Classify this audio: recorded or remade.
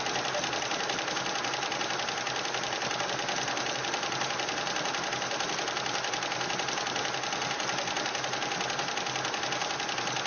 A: recorded